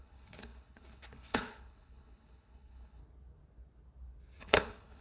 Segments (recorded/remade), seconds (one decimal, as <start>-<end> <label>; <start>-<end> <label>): 0.0-3.0 remade; 3.0-4.4 recorded; 4.4-5.0 remade